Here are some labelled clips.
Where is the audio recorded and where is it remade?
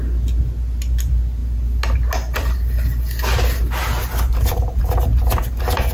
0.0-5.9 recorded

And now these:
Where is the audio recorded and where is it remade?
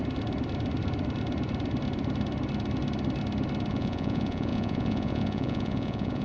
0.0-3.7 recorded; 3.7-6.2 remade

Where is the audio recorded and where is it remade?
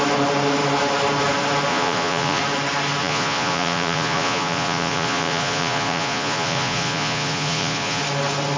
0.0-1.7 recorded; 1.7-2.4 remade; 2.4-3.0 recorded; 3.0-8.0 remade; 8.0-8.6 recorded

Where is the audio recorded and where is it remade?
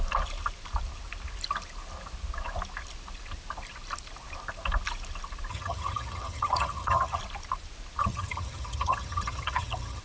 0.0-5.5 recorded; 5.5-7.2 remade; 7.2-8.0 recorded; 8.0-10.0 remade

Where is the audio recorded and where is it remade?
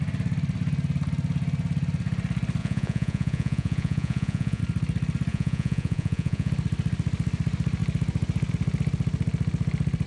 0.0-2.6 recorded; 2.6-4.6 remade; 4.6-5.3 recorded; 5.3-6.5 remade; 6.5-10.1 recorded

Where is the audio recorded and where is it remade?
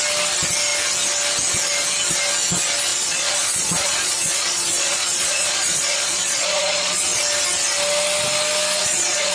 0.0-2.9 recorded; 2.9-7.2 remade; 7.2-8.8 recorded; 8.8-9.3 remade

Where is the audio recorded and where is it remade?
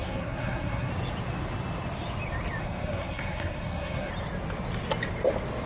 0.0-0.9 remade; 0.9-2.6 recorded; 2.6-4.1 remade; 4.1-5.7 recorded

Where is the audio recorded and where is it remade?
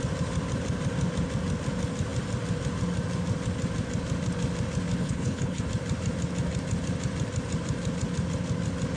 0.0-5.0 recorded; 5.0-5.6 remade; 5.6-9.0 recorded